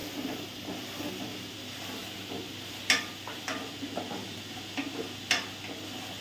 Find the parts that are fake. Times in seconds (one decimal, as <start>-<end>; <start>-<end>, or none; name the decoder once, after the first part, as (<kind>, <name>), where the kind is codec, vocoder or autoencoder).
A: none